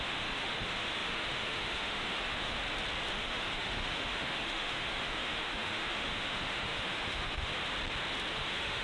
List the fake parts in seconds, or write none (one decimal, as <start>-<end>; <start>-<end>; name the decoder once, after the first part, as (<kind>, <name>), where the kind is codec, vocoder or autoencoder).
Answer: 0.0-2.6 (autoencoder, DAC-VAE); 3.1-7.5; 8.3-8.8